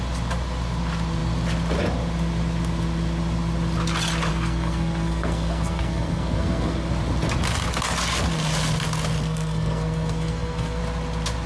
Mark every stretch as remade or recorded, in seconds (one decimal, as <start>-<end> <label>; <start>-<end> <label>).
0.0-4.3 recorded; 4.3-6.9 remade; 6.9-9.2 recorded; 9.2-10.8 remade; 10.8-11.5 recorded